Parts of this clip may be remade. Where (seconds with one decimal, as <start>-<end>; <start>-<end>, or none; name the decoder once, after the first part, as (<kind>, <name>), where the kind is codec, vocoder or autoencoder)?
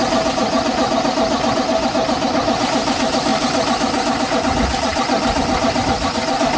none